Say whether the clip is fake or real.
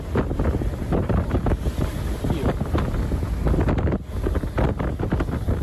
real